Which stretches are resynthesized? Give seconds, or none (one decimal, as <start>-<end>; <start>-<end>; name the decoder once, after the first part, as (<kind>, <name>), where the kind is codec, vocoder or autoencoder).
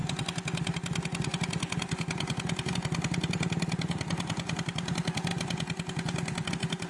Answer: none